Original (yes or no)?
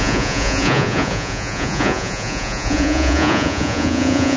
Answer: no